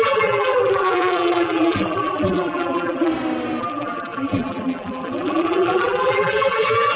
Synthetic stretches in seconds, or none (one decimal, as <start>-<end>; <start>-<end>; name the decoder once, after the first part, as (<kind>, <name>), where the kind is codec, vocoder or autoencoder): 0.0-3.1 (vocoder, BigVGAN v2); 3.6-7.0